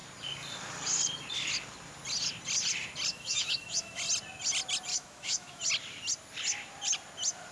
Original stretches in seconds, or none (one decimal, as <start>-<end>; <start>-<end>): 0.0-3.1; 4.0-4.9; 5.6-7.5